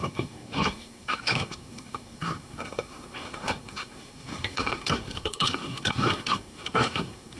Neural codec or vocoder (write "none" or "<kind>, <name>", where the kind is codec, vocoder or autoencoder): codec, SNAC